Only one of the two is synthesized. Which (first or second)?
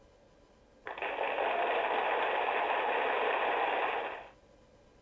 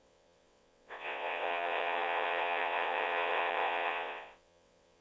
second